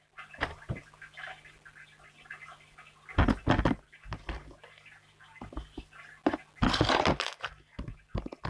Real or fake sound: real